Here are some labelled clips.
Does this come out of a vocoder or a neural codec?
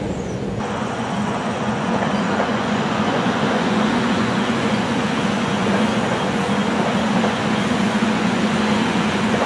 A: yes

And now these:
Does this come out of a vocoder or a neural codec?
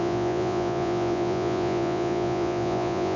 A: yes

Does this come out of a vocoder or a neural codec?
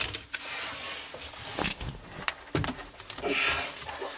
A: no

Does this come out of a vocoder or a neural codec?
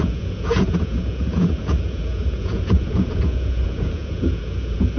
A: yes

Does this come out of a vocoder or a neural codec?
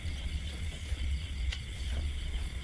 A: yes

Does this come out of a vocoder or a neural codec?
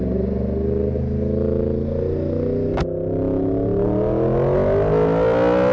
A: no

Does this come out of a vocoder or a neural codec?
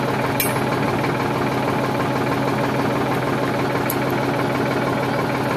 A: no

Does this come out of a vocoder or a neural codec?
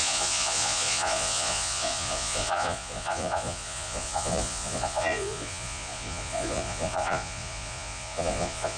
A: yes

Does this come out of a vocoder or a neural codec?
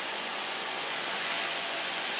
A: yes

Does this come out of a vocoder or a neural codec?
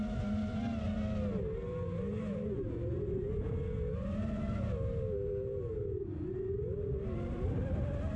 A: no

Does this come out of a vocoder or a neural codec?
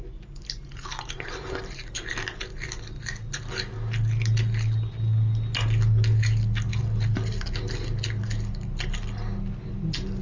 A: no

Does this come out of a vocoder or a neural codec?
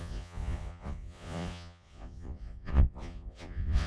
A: yes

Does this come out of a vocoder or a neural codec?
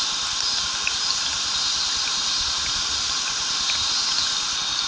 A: no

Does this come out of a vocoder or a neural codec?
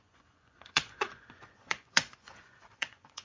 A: yes